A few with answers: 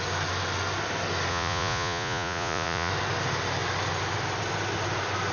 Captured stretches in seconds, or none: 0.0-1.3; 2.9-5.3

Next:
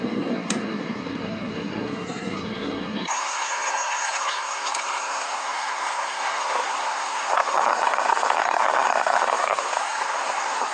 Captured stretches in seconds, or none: none